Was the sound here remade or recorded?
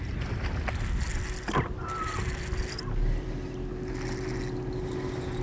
recorded